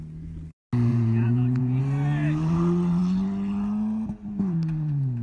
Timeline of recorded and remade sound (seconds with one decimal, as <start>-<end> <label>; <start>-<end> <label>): 0.0-0.9 recorded; 0.9-1.8 remade; 1.8-5.2 recorded